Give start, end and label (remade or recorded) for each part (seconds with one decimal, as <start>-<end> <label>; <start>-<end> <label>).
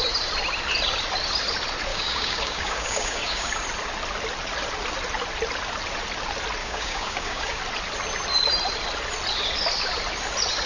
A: 0.0-1.9 recorded; 1.9-3.5 remade; 3.5-6.6 recorded; 6.6-7.6 remade; 7.6-10.7 recorded